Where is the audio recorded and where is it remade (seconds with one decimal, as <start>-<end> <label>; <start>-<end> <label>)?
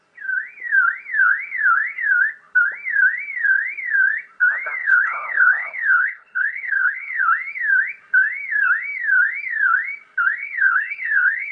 0.0-4.8 recorded; 4.8-7.2 remade; 7.2-10.4 recorded; 10.4-11.5 remade